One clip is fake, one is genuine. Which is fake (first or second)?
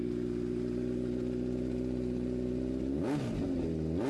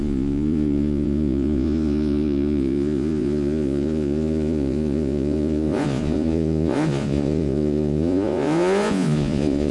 second